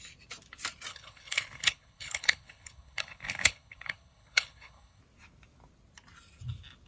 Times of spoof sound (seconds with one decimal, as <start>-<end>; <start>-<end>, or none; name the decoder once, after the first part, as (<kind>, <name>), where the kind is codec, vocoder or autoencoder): 0.9-5.0 (codec, HILCodec)